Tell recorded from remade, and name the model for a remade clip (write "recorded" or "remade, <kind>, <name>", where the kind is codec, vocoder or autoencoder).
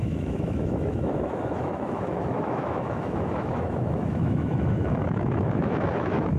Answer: remade, autoencoder, DAC-VAE